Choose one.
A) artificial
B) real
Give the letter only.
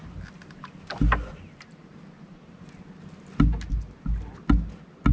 B